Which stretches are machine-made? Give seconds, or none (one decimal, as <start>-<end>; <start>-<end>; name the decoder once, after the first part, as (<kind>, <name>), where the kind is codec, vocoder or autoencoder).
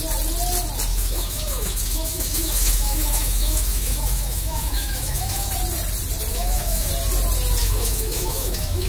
0.9-5.5 (autoencoder, DAC-VAE); 6.3-6.9; 7.6-8.9